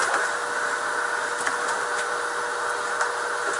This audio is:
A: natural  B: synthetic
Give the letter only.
A